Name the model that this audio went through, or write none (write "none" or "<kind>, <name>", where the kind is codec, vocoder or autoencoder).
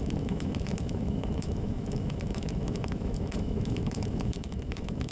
autoencoder, DAC-VAE